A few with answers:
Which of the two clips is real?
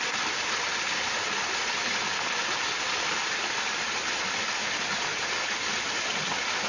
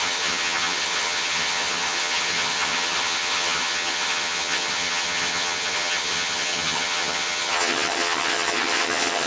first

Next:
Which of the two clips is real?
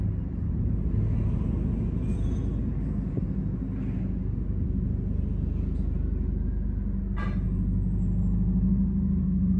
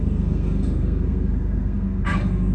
first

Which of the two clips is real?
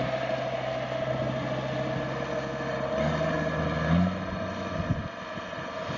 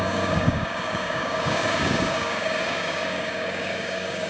first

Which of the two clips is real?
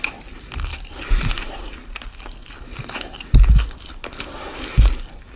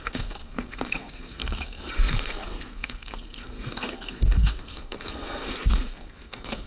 first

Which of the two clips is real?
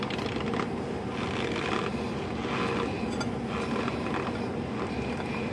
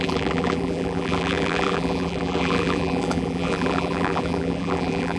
first